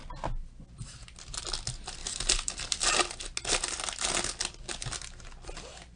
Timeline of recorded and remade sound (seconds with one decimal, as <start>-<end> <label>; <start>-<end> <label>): 0.0-2.0 recorded; 2.0-3.0 remade; 3.0-6.0 recorded